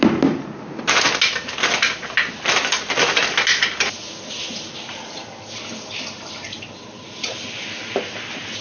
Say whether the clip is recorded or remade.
recorded